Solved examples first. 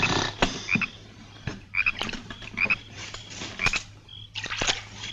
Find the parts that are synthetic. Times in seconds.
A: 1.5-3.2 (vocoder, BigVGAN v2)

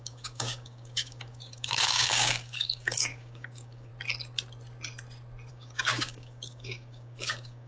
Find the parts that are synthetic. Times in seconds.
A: 0.0-3.9 (codec, DAC); 5.5-7.7

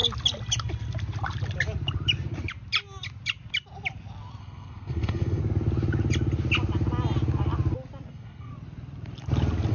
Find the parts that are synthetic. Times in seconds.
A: 4.4-5.4 (codec, SNAC); 8.1-8.5

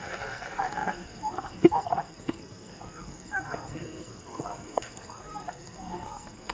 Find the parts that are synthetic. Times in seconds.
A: 0.0-6.5 (codec, SNAC)

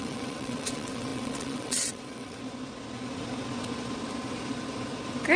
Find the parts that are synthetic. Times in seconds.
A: 0.0-2.4 (vocoder, WaveNeXt)

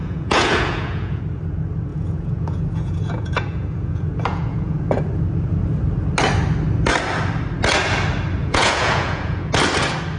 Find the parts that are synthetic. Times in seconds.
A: 0.0-1.2 (vocoder, Vocos); 1.9-5.0; 8.4-9.5